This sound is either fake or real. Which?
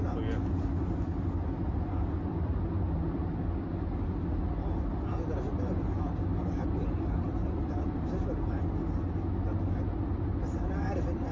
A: real